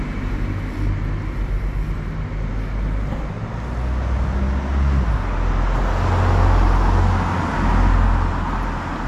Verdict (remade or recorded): recorded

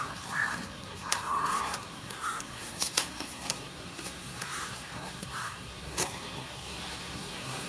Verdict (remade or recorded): remade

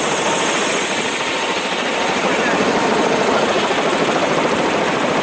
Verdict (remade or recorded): recorded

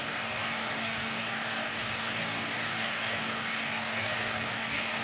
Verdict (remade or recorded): remade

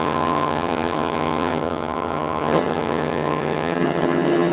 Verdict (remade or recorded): remade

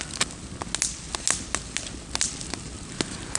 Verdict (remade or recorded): recorded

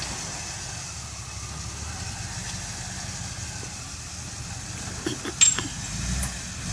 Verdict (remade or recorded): recorded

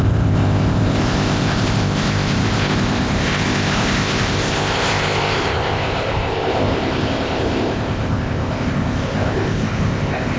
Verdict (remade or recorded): remade